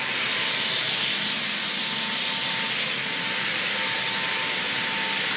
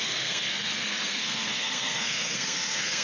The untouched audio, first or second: first